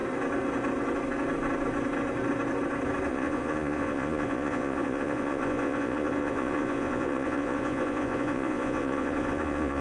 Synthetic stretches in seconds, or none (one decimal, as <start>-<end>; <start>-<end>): 3.1-9.8

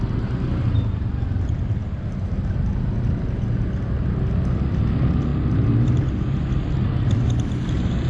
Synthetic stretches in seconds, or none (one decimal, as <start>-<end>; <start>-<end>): none

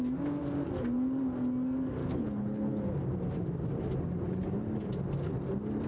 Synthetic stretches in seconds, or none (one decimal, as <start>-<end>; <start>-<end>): 2.0-2.8

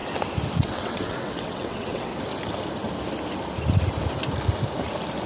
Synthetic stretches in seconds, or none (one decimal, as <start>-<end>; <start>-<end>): 0.5-2.1

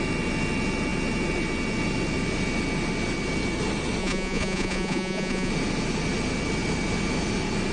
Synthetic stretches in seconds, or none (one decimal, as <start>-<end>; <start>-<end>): 4.0-5.5

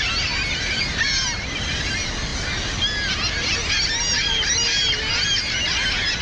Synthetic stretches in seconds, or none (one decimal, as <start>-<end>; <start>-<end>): none